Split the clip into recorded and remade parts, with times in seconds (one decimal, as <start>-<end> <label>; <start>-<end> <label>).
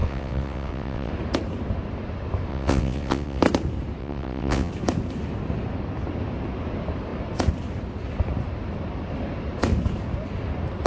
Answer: 0.0-1.1 remade; 1.1-2.5 recorded; 2.5-3.4 remade; 3.4-4.0 recorded; 4.0-4.7 remade; 4.7-10.9 recorded